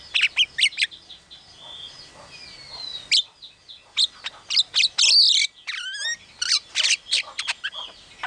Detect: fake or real real